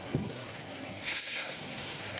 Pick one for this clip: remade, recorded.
remade